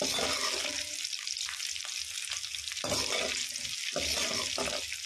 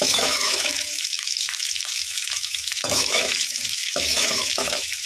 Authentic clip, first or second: first